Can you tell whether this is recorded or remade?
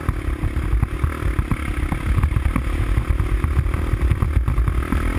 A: recorded